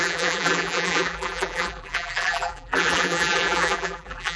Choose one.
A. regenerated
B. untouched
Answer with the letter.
A